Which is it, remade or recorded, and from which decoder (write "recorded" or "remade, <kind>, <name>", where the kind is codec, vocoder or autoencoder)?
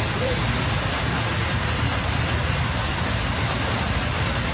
recorded